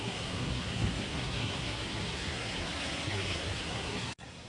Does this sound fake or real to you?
fake